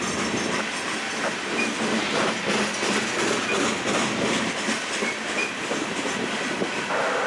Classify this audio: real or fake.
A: real